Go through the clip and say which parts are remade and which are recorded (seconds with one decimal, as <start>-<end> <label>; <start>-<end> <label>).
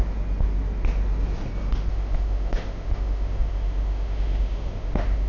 0.0-1.9 recorded; 1.9-5.3 remade